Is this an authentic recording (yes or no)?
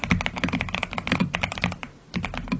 yes